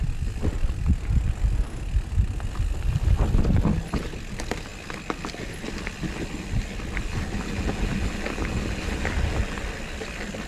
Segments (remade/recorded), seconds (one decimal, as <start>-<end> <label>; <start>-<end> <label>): 0.0-10.5 recorded